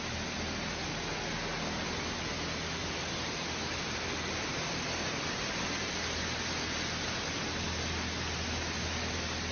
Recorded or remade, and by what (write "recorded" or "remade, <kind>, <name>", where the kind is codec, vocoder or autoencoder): recorded